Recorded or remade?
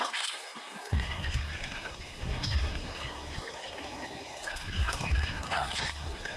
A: remade